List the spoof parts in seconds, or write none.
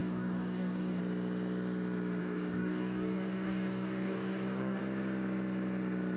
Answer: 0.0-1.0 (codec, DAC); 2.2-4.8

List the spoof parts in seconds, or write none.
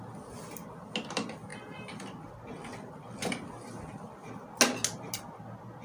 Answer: none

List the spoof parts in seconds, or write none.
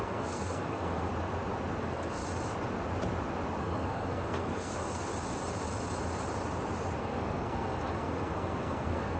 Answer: 0.0-1.1 (codec, SNAC); 1.8-2.2; 3.6-5.1; 7.0-9.2